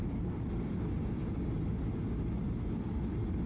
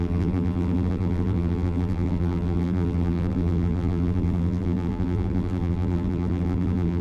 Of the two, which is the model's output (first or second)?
second